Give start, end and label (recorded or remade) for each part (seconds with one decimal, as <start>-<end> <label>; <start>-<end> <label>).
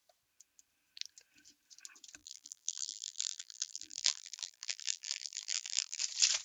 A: 0.0-2.2 recorded; 2.2-6.0 remade; 6.0-6.4 recorded